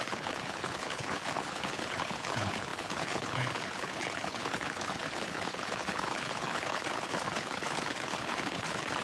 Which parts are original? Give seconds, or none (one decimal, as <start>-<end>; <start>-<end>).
none